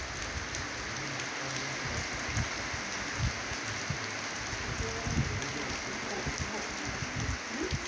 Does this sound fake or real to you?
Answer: real